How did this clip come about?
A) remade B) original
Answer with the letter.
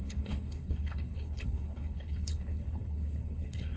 A